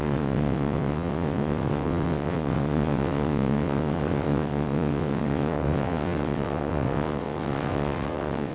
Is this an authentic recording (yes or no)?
no